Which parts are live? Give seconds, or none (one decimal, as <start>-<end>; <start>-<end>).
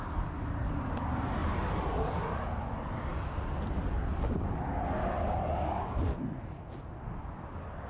0.0-7.9